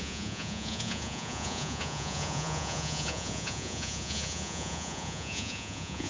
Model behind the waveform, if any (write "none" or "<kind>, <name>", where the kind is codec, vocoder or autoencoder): vocoder, Vocos